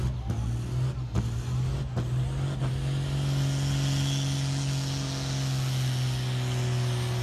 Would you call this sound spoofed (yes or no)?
no